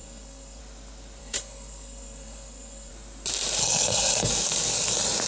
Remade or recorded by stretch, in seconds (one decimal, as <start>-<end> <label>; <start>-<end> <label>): 0.0-0.6 remade; 0.6-1.2 recorded; 1.2-2.9 remade; 2.9-3.6 recorded; 3.6-4.3 remade; 4.3-5.3 recorded